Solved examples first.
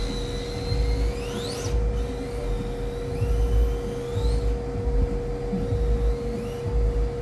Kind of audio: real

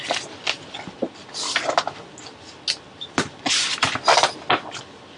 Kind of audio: real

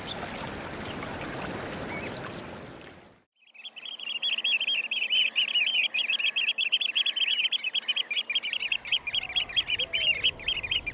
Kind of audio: real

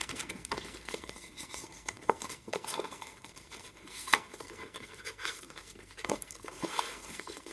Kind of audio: fake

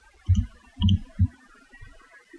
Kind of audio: real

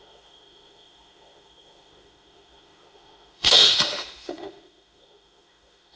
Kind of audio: fake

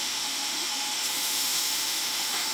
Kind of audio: fake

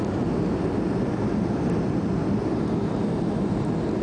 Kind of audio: real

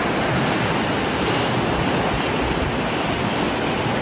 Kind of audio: real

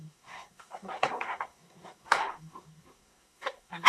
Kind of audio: fake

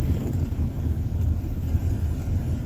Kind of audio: fake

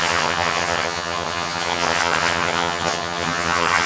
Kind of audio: fake